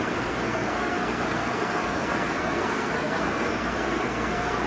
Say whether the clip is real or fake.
fake